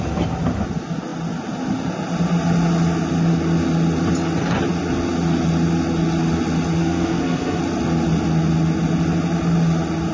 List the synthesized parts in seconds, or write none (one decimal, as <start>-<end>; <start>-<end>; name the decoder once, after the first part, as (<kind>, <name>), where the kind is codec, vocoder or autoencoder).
6.8-7.6 (codec, SNAC)